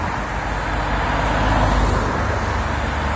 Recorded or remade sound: recorded